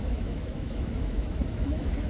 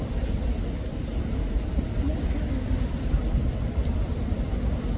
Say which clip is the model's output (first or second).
first